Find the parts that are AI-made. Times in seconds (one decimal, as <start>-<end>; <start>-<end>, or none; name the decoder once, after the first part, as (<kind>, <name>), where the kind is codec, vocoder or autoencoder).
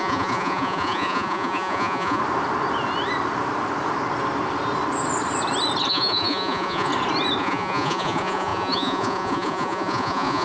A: 0.0-2.2 (vocoder, Vocos); 5.9-6.9; 7.4-10.4